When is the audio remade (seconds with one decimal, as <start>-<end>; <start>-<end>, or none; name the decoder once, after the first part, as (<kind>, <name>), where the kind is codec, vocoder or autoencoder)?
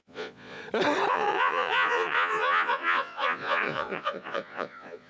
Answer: 0.0-0.6 (vocoder, Vocos); 1.1-5.1